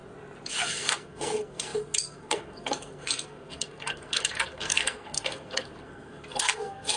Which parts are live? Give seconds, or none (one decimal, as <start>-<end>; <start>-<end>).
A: 0.0-0.5